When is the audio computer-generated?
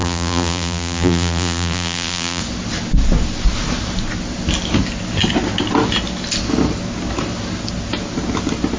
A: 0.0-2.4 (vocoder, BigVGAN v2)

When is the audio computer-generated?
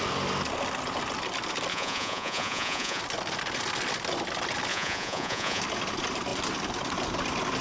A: 1.7-3.0 (vocoder, Vocos); 4.7-5.6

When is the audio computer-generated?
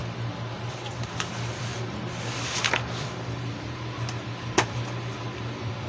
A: 0.7-5.9 (vocoder, BigVGAN v2)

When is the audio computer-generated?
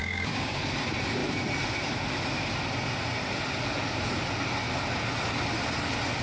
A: 0.0-0.6 (codec, DAC)